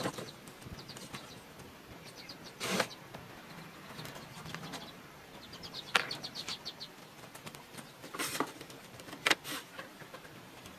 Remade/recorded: remade